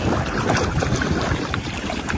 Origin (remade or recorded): recorded